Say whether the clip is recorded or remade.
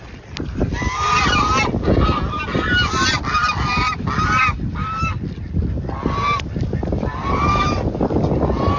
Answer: recorded